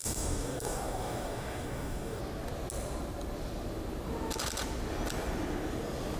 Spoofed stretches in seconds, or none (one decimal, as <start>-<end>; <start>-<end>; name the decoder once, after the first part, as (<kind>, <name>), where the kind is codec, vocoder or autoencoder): 0.0-2.2 (codec, DAC)